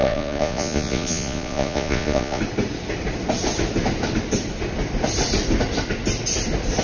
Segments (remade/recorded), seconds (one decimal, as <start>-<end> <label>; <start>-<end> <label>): 0.0-2.4 remade; 2.4-6.8 recorded